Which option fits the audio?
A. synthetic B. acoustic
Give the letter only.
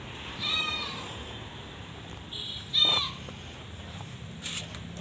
B